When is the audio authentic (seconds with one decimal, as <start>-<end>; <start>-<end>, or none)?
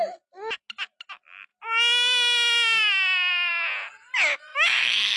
0.0-4.5